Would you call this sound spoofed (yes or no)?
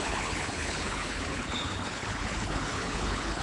yes